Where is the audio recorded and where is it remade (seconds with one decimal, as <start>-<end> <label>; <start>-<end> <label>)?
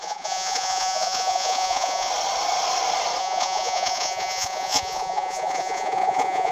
0.0-2.1 remade; 2.1-3.2 recorded; 3.2-6.5 remade